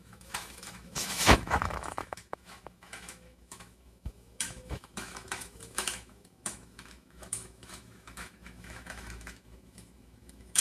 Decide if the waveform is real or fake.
fake